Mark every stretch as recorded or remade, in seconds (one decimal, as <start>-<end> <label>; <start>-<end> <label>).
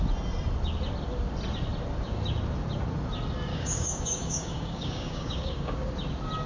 0.0-3.5 recorded; 3.5-5.9 remade; 5.9-6.5 recorded